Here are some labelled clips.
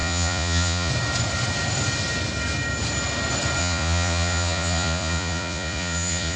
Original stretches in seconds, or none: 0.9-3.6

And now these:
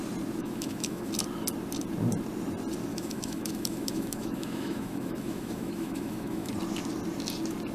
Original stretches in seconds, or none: 0.0-0.4; 1.1-2.9; 6.5-7.7

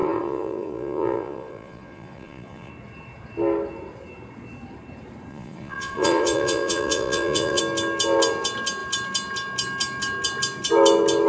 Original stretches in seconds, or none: 2.7-5.3; 7.6-11.3

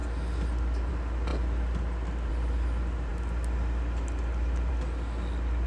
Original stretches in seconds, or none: 0.0-5.7

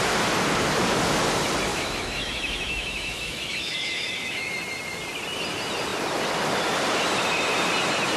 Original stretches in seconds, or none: 0.0-1.7; 4.5-8.2